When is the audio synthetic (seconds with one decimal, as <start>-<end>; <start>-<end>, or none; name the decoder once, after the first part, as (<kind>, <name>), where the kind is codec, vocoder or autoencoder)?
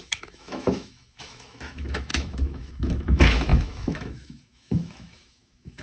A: 0.0-5.8 (autoencoder, DAC-VAE)